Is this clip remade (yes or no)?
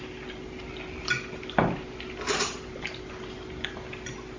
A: no